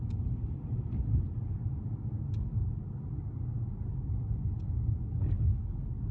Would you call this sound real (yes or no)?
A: yes